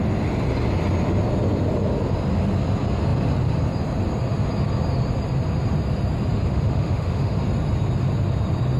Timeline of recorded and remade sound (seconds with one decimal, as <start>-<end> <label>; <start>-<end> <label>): 0.0-6.5 recorded; 6.5-7.4 remade; 7.4-8.8 recorded